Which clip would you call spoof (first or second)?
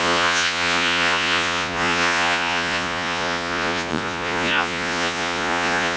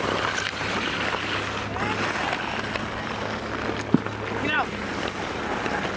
first